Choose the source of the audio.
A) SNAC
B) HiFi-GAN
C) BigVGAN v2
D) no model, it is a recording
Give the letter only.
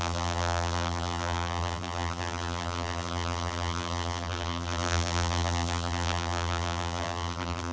C